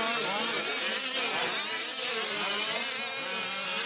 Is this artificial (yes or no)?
no